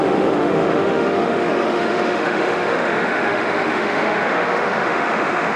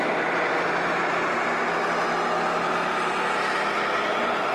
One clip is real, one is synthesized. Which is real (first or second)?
second